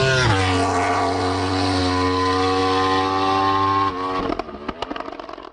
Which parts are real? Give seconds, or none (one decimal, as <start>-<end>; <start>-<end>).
0.0-0.4; 1.8-5.5